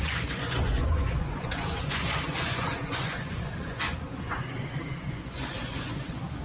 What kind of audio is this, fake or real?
fake